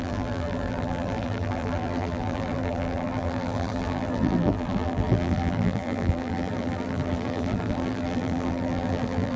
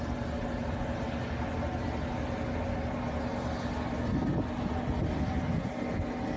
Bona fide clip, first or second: second